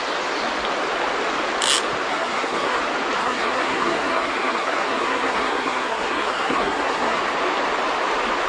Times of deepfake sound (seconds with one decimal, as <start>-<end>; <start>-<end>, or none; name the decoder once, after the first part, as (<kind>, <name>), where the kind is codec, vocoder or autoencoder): 2.1-2.8 (codec, SNAC); 3.2-7.2